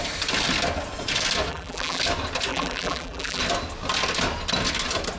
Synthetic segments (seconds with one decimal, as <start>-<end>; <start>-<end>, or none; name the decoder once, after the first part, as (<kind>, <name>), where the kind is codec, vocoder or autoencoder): 1.5-2.0 (vocoder, BigVGAN v2); 2.5-3.4